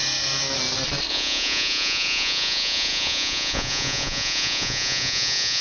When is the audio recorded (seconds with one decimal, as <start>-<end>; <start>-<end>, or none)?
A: 0.0-1.1